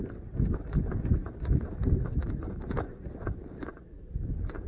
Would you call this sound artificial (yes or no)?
no